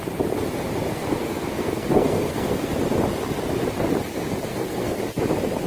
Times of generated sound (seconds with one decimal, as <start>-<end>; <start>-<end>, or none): 0.9-2.7; 4.5-5.0